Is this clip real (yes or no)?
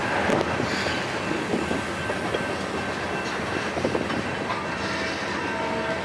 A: yes